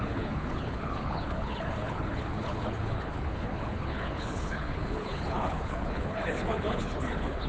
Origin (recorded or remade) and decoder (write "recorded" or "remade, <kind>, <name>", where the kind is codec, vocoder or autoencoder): remade, codec, HILCodec